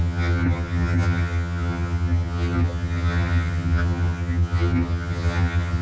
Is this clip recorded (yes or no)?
no